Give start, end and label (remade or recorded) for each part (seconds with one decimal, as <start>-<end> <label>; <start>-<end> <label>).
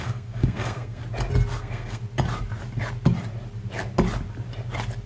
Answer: 0.0-1.0 remade; 1.0-1.6 recorded; 1.6-2.0 remade; 2.0-5.1 recorded